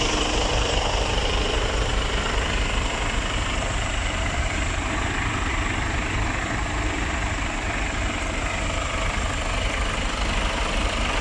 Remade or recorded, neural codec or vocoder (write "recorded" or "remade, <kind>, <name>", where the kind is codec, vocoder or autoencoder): remade, vocoder, BigVGAN v2